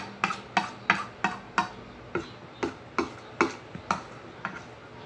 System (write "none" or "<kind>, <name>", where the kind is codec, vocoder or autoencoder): none